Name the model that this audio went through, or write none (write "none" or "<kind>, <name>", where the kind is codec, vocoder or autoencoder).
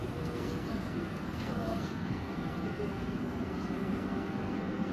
codec, SNAC